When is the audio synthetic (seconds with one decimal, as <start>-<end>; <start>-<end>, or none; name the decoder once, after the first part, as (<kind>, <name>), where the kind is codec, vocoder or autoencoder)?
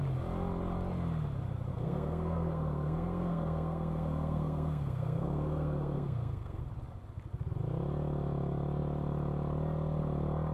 1.7-6.6 (codec, SNAC)